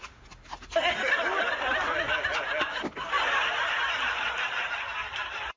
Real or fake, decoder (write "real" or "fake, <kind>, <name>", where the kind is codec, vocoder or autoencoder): real